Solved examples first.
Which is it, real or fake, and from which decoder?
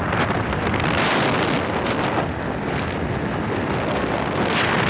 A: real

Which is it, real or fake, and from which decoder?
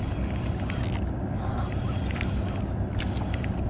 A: real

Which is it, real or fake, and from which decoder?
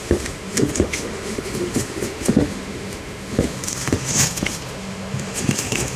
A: fake, autoencoder, DAC-VAE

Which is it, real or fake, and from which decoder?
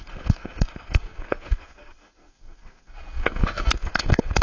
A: fake, codec, SNAC